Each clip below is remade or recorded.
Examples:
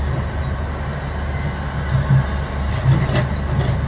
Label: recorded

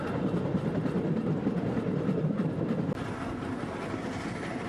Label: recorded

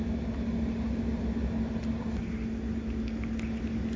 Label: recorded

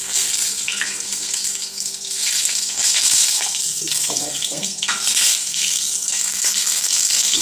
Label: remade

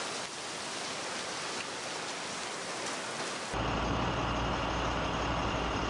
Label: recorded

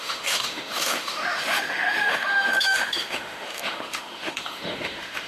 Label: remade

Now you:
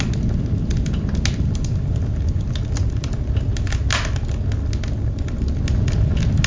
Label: recorded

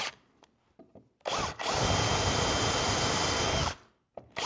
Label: recorded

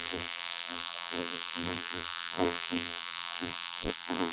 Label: remade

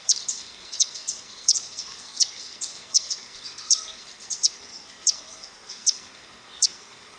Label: remade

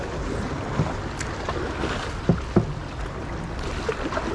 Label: recorded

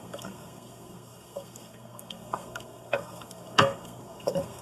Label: remade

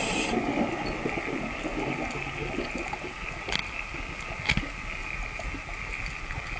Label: recorded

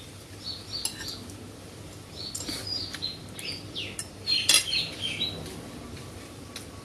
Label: recorded